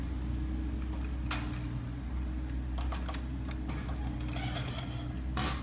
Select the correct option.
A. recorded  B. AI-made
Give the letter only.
A